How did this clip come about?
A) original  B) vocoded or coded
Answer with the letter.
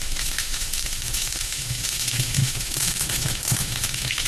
B